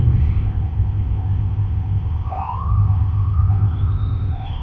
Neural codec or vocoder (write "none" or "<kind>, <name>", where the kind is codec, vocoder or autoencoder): codec, ZipCodec